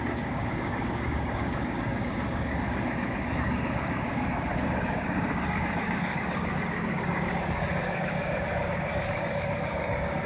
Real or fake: fake